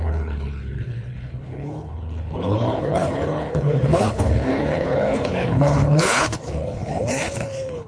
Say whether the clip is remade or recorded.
remade